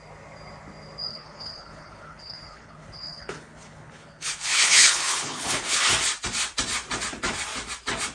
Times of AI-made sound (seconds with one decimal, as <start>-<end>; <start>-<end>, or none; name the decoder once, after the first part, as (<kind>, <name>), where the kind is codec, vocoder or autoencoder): 1.1-5.9 (codec, HILCodec)

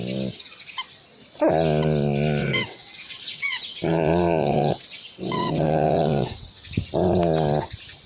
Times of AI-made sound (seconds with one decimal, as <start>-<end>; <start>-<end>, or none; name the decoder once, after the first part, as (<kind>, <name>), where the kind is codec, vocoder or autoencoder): 2.4-6.5 (vocoder, WaveNeXt)

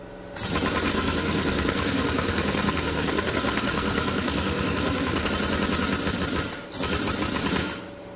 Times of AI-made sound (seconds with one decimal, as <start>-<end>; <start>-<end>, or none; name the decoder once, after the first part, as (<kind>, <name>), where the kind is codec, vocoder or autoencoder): 0.9-5.3 (codec, SNAC)